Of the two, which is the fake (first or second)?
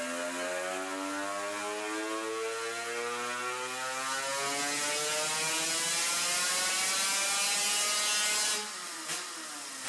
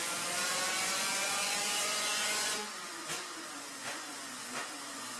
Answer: second